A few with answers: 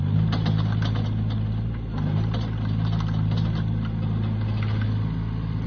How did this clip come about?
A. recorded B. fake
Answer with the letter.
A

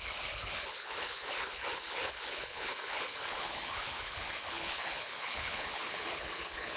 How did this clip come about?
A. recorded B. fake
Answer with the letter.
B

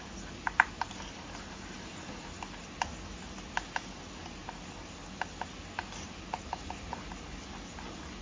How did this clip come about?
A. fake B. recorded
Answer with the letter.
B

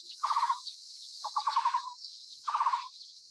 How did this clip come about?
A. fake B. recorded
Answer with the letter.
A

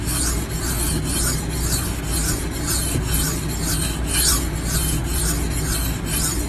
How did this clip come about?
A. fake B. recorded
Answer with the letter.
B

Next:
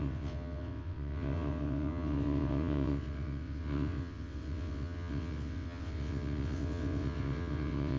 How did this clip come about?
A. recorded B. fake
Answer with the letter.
B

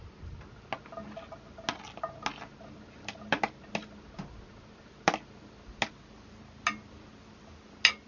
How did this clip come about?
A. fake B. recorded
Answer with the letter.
B